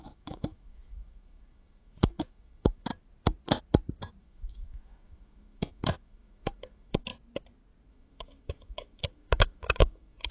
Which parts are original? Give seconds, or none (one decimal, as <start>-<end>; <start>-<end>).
2.9-4.2; 7.1-7.9